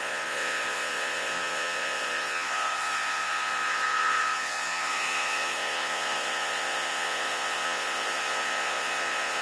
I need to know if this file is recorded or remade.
remade